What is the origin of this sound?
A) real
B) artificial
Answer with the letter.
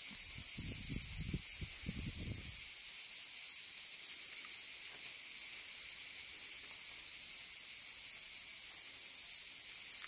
A